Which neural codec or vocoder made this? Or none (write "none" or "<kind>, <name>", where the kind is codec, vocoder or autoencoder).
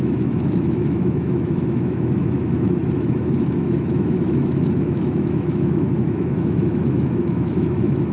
autoencoder, DAC-VAE